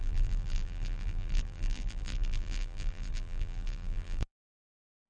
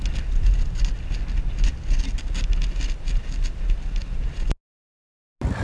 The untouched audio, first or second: second